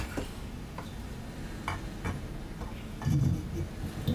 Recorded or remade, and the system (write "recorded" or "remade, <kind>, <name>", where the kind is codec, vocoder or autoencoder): recorded